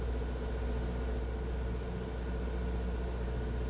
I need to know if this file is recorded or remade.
recorded